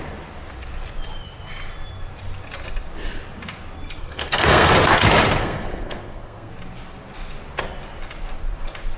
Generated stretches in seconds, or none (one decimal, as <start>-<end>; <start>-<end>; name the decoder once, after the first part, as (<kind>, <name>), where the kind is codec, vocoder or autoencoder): 4.0-4.7 (codec, SNAC); 5.4-6.5